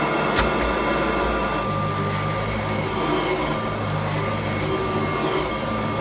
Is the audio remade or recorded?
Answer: recorded